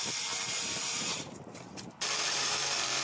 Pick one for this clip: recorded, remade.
remade